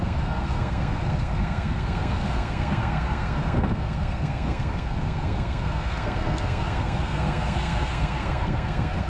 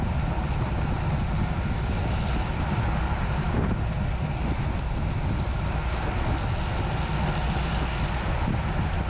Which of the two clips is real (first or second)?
second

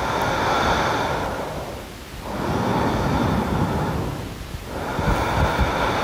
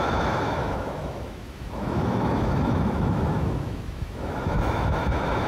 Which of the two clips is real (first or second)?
first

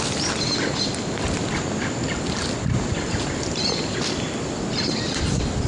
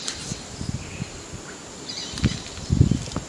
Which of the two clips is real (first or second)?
first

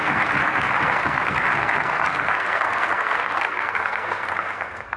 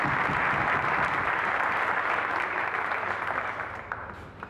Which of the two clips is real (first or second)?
second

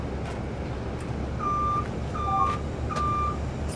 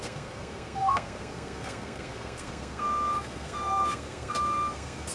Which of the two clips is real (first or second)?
first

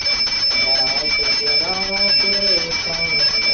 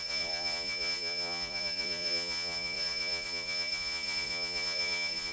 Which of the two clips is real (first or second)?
first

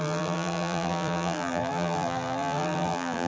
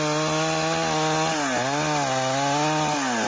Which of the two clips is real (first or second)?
second